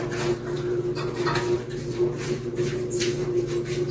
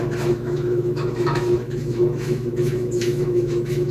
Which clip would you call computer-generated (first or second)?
second